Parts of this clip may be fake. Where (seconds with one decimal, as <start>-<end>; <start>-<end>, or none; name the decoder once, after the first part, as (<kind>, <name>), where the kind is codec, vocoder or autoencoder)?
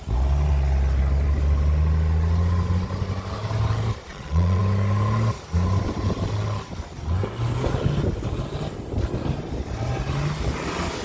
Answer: 4.0-4.6 (vocoder, Vocos)